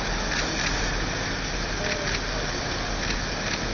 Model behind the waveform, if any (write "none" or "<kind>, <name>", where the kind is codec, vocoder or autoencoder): none